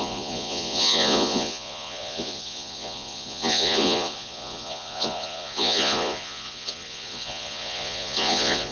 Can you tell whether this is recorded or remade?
remade